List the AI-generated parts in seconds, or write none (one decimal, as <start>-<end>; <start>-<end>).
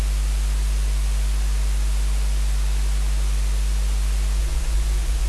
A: 4.4-5.3